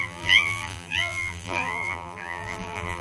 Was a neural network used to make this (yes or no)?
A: yes